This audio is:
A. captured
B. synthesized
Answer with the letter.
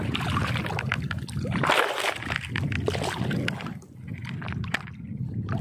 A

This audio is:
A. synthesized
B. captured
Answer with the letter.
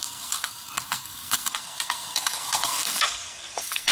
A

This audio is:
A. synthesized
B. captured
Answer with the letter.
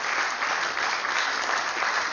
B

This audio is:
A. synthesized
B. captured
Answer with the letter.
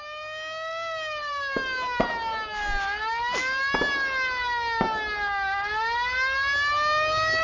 B